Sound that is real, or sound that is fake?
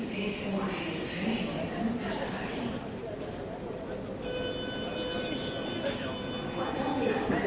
real